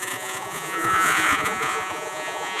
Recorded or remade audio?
remade